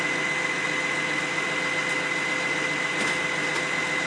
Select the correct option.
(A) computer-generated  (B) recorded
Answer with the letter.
B